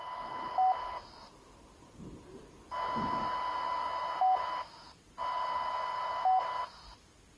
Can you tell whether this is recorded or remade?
recorded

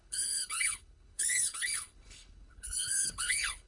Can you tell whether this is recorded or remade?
remade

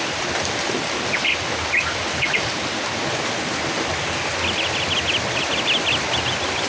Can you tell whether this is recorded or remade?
recorded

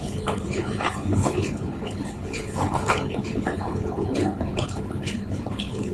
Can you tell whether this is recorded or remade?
remade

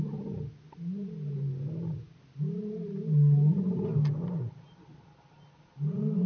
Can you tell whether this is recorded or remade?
recorded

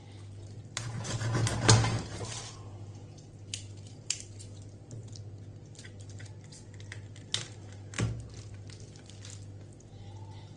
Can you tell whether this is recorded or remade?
recorded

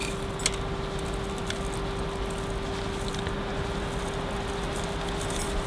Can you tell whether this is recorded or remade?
recorded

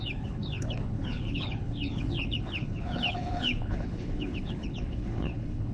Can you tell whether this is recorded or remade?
remade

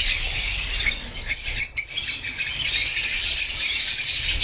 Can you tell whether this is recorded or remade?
recorded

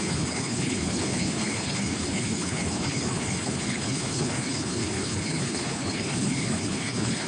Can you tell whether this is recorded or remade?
remade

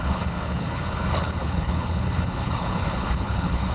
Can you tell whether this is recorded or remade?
remade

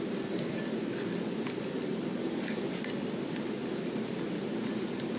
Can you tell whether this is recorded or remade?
recorded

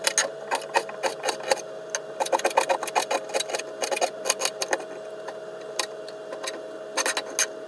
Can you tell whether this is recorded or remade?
recorded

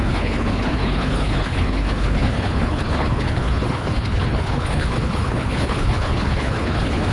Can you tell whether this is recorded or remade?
remade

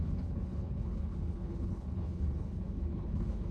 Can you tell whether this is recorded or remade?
remade